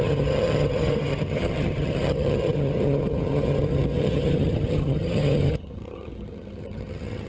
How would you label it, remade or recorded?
remade